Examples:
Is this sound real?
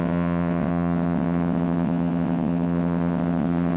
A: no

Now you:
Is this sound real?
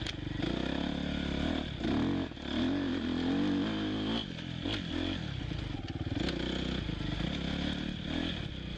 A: yes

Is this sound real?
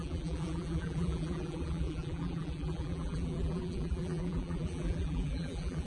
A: no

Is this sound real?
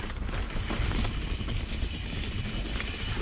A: no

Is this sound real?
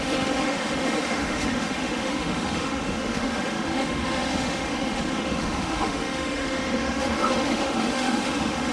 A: no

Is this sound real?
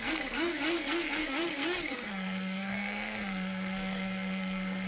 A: no